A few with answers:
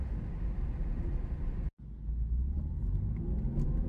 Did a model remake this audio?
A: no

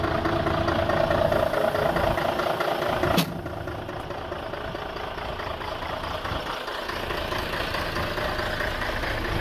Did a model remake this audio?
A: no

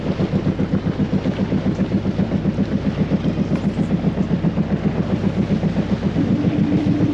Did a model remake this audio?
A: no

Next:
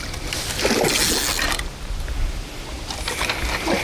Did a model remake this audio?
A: no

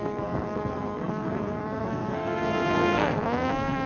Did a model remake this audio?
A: yes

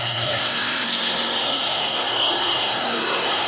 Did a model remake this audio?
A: yes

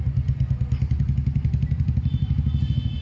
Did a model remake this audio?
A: no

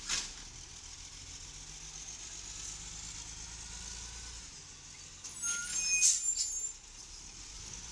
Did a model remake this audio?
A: no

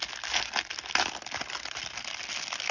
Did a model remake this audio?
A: no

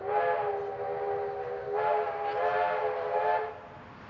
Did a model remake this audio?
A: no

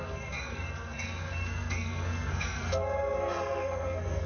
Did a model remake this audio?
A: yes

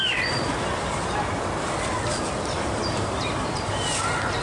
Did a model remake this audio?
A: yes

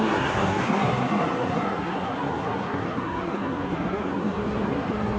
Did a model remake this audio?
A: yes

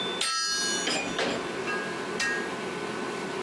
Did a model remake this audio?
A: no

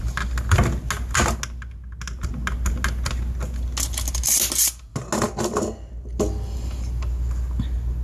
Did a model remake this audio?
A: no